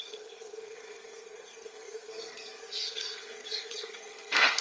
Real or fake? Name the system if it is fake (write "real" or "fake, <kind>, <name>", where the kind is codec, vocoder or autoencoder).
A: fake, codec, SNAC